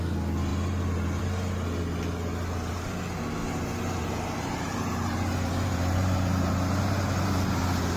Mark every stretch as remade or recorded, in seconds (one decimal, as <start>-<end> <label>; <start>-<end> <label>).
0.0-2.5 recorded; 2.5-3.0 remade; 3.0-3.4 recorded; 3.4-8.0 remade